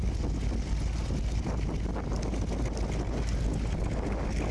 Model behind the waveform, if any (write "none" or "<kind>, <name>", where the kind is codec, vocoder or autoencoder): none